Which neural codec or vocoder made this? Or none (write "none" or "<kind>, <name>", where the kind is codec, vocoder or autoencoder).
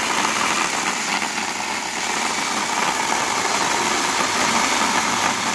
none